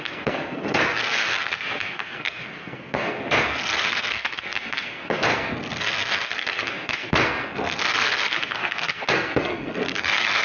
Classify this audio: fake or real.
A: fake